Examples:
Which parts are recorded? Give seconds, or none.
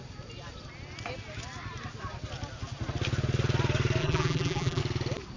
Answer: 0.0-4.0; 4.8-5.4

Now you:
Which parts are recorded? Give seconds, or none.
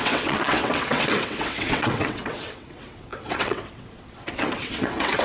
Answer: none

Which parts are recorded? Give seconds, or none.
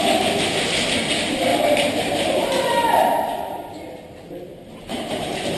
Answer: 0.0-1.5; 3.7-4.5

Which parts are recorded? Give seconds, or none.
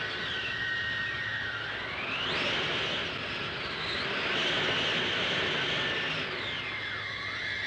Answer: 0.0-7.7